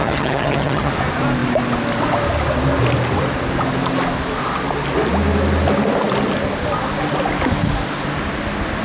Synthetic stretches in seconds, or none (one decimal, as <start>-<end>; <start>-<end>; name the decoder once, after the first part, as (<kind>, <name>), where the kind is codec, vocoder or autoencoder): 0.0-0.9 (vocoder, HiFi-GAN)